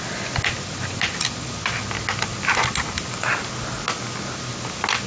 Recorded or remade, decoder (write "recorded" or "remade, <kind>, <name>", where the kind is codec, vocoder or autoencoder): recorded